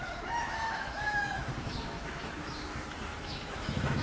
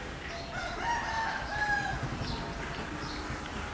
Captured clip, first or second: second